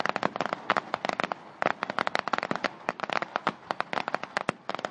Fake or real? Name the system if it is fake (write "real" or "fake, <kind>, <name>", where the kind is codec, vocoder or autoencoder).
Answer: real